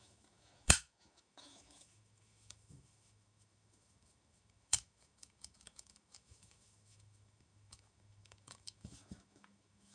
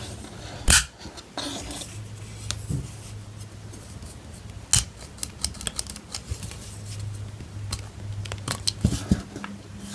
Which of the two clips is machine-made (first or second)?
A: first